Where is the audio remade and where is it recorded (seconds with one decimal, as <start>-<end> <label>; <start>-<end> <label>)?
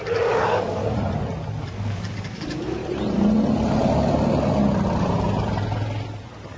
0.0-0.8 remade; 0.8-1.6 recorded; 1.6-2.8 remade; 2.8-6.6 recorded